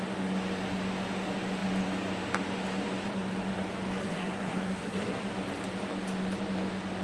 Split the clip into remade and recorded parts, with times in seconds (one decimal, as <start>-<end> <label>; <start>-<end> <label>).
0.0-4.0 recorded; 4.0-5.2 remade; 5.2-7.0 recorded